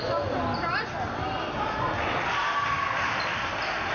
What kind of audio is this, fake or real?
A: real